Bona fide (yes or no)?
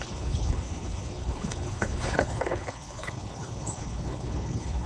no